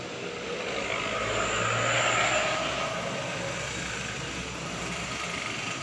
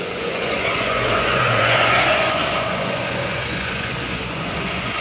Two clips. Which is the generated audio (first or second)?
second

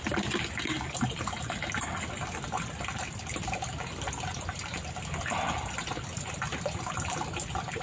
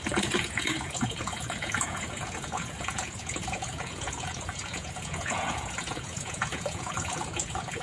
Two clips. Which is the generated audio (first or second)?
second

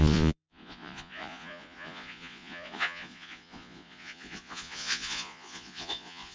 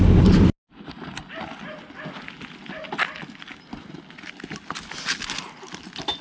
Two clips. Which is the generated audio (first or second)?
first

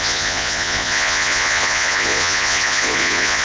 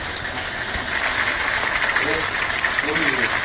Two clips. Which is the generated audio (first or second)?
first